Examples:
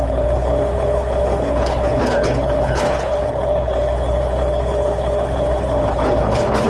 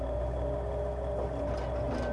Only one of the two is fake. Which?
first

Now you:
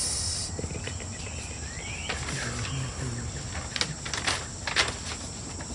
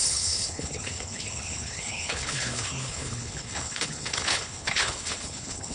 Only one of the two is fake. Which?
second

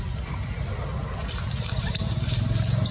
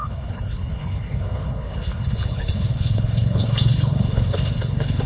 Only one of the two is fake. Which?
second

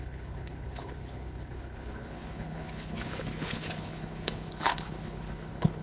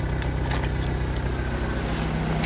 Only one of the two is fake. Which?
first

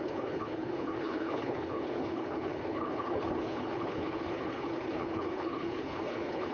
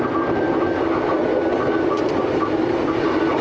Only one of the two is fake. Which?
first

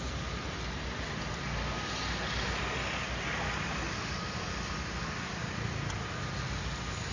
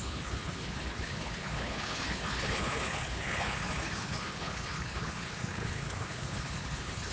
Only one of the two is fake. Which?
second